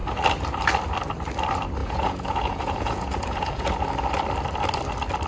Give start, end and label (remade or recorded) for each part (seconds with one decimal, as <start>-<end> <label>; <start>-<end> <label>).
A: 0.0-1.8 recorded; 1.8-3.7 remade; 3.7-5.3 recorded